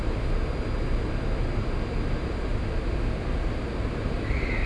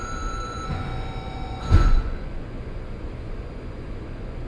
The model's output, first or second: second